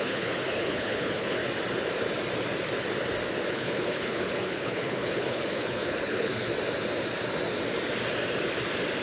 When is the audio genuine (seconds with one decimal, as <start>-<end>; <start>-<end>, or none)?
1.4-3.5; 6.5-9.0